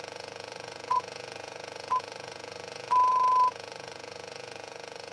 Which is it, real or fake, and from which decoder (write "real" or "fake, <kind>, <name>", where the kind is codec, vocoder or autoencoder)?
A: fake, vocoder, Vocos